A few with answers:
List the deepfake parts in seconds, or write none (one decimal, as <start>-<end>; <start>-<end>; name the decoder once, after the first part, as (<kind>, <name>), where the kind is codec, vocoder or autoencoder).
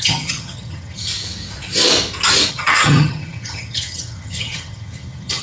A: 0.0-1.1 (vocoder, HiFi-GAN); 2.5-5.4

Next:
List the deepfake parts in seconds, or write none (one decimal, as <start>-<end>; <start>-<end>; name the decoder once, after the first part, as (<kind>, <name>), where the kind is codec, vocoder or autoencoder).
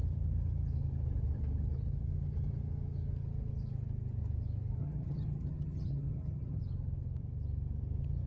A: 4.8-6.6 (vocoder, HiFi-GAN)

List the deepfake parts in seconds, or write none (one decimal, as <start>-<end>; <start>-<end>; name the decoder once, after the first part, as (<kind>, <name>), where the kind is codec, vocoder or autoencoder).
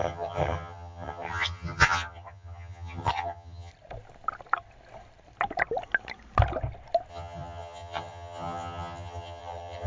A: 0.0-3.7 (vocoder, HiFi-GAN); 7.1-9.9